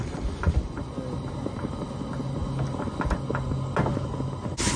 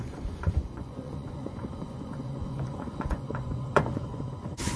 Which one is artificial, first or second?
second